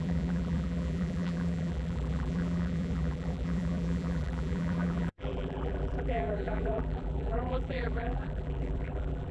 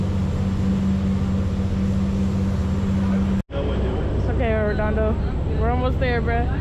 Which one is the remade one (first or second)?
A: first